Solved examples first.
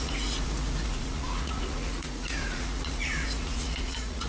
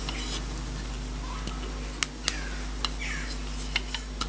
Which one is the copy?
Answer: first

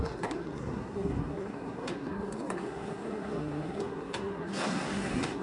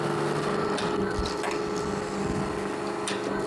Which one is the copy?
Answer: first